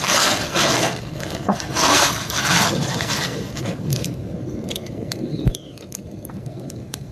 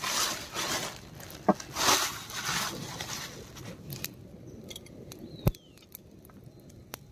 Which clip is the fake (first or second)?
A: first